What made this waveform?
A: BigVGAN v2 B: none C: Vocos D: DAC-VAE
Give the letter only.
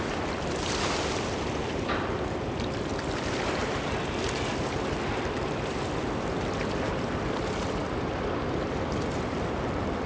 A